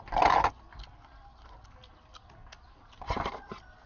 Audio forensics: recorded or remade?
recorded